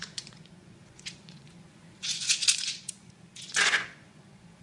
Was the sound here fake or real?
fake